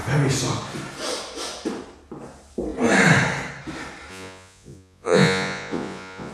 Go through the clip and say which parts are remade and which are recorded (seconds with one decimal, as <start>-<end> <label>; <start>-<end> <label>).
0.0-4.1 recorded; 4.1-6.3 remade